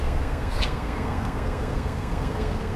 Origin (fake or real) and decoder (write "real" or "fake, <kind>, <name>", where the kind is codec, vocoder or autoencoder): fake, codec, SNAC